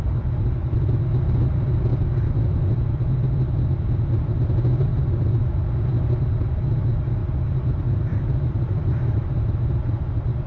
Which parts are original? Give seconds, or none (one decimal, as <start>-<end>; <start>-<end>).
0.0-4.9; 5.5-7.2; 9.4-10.5